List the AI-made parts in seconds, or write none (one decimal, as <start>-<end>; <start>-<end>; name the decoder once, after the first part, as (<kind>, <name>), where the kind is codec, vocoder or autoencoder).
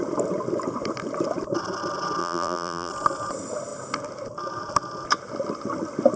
2.2-2.9 (vocoder, BigVGAN v2)